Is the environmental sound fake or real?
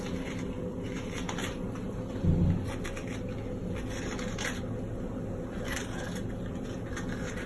real